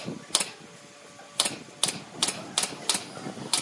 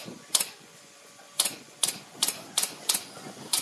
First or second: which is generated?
second